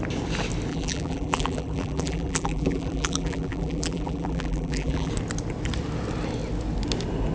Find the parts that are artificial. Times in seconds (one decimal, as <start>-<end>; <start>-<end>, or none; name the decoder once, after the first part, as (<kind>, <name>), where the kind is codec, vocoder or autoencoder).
0.7-5.1 (vocoder, BigVGAN v2)